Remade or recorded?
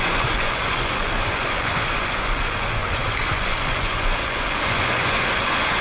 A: remade